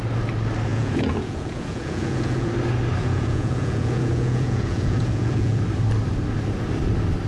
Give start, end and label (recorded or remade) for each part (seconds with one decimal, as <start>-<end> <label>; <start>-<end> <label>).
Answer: 0.0-0.7 recorded; 0.7-2.5 remade; 2.5-3.0 recorded; 3.0-5.6 remade; 5.6-7.3 recorded